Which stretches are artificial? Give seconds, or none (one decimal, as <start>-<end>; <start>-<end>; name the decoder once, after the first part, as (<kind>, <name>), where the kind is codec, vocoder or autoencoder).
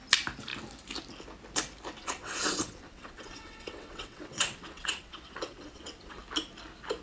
2.0-6.2 (vocoder, WaveNeXt)